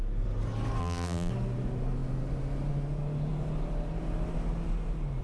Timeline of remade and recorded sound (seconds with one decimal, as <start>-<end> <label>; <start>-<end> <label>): 0.0-0.8 recorded; 0.8-1.3 remade; 1.3-5.2 recorded